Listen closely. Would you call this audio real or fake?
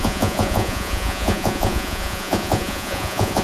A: fake